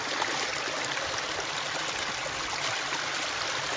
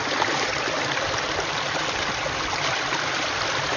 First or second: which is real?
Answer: first